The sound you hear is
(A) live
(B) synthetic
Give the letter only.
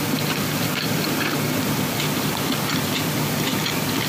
B